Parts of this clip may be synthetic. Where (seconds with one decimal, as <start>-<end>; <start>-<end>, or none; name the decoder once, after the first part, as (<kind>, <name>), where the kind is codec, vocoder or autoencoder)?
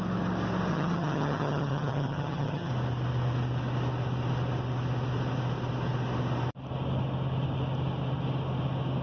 0.7-2.7 (vocoder, HiFi-GAN)